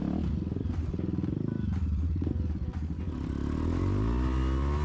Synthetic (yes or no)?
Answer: no